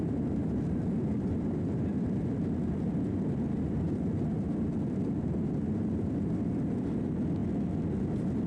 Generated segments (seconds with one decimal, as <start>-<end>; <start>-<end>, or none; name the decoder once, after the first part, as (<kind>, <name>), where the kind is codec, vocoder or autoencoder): 0.0-7.4 (vocoder, BigVGAN v2); 8.0-8.5